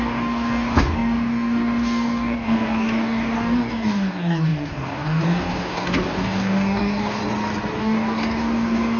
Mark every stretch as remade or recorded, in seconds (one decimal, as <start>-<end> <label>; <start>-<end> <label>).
0.0-7.2 remade; 7.2-7.8 recorded; 7.8-9.0 remade